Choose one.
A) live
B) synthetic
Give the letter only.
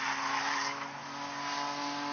A